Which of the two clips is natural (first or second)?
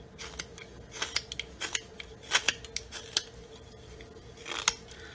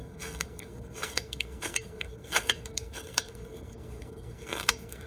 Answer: first